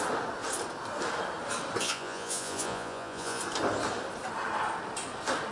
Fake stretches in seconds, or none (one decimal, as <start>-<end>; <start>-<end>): 1.8-3.4